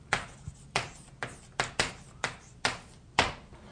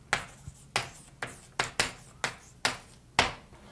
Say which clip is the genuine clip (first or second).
second